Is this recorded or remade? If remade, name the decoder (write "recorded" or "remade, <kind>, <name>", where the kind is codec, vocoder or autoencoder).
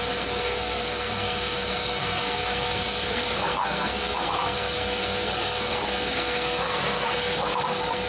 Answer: remade, codec, SNAC